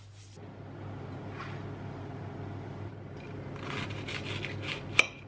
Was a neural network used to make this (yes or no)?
no